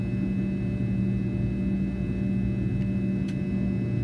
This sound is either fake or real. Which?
real